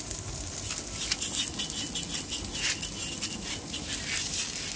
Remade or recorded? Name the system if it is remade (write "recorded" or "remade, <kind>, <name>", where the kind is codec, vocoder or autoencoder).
recorded